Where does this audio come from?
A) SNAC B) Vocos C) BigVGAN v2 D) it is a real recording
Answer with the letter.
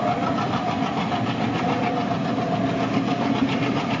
D